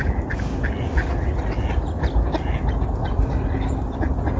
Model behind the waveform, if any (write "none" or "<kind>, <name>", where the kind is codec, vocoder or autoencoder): none